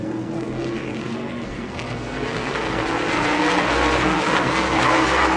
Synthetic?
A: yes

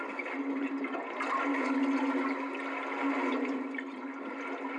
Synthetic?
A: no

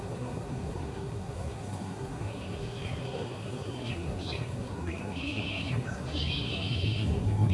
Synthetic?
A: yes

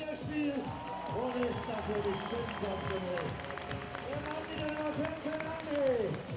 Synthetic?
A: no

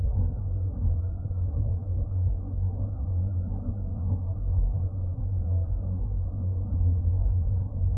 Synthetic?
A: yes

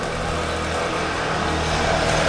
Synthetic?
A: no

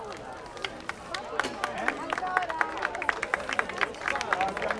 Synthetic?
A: no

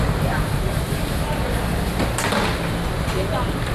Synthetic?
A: no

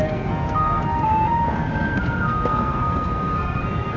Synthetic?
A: yes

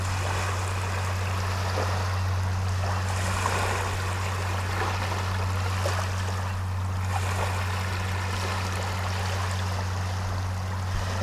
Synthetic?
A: no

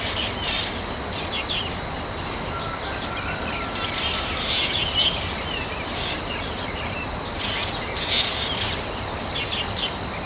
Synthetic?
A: no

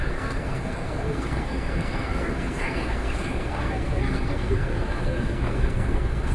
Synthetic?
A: yes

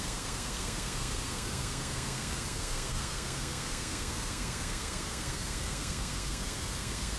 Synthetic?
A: yes